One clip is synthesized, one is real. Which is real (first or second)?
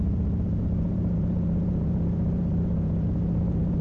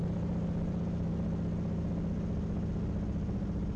second